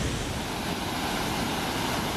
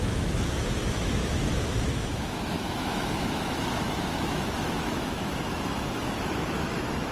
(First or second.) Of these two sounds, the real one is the first